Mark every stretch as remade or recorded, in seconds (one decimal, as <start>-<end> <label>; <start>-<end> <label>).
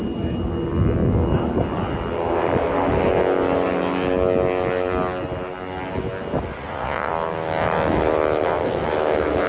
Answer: 0.0-6.5 recorded; 6.5-7.1 remade; 7.1-9.5 recorded